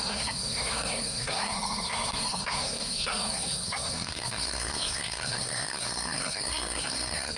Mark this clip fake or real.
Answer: fake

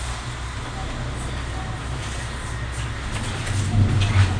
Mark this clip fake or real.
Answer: real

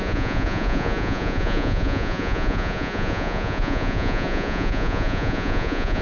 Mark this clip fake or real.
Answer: fake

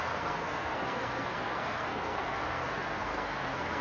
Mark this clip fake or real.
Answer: fake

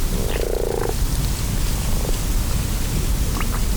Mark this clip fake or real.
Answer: real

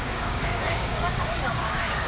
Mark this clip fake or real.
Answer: fake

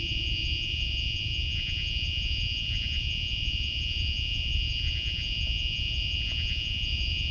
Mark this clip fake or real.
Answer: fake